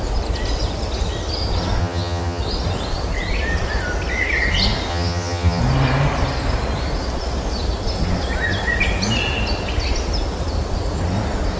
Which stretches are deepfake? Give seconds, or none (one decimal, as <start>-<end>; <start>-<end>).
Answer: 1.8-2.4; 4.9-5.6